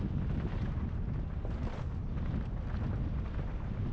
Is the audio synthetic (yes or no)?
no